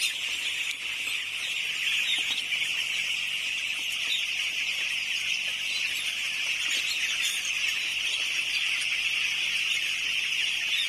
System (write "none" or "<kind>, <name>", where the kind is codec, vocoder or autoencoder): none